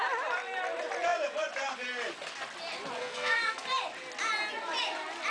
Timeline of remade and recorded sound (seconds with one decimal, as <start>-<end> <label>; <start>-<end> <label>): 0.0-3.0 recorded; 3.0-3.6 remade; 3.6-5.3 recorded